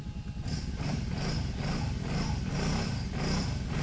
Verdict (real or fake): real